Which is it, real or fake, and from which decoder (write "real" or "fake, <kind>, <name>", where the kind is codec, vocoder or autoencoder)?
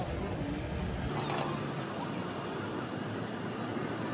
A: real